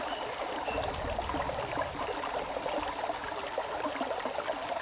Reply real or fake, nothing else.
real